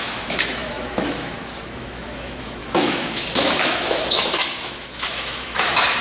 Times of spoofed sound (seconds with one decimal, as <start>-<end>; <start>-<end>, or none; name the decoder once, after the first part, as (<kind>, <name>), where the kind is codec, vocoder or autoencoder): 0.0-6.0 (autoencoder, DAC-VAE)